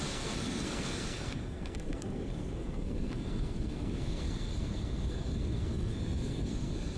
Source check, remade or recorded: remade